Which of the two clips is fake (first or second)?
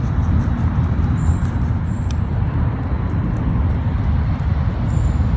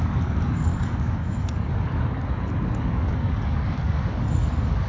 second